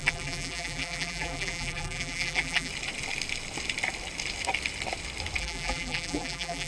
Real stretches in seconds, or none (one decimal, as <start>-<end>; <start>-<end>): 2.7-5.4